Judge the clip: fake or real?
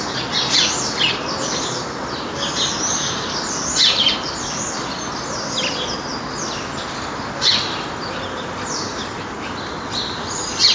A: real